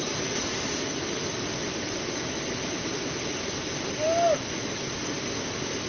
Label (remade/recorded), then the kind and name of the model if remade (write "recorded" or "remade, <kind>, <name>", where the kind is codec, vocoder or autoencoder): recorded